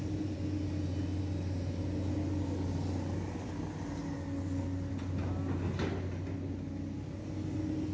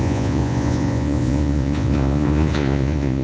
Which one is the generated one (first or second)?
second